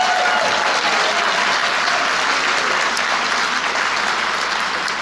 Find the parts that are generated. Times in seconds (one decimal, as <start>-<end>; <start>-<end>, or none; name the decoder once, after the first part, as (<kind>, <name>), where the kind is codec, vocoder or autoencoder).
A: none